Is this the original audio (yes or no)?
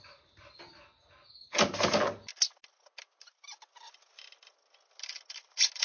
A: yes